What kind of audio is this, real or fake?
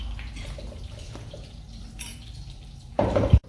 fake